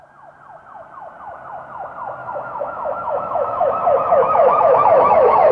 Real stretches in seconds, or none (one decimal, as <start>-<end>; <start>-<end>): 0.0-2.2